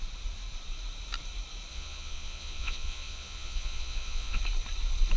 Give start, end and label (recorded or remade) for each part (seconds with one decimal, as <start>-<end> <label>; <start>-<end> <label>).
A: 0.0-1.7 recorded; 1.7-4.4 remade; 4.4-5.2 recorded